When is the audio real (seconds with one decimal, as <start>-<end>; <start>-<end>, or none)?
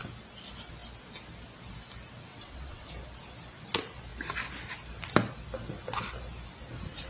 0.0-2.3; 2.9-7.1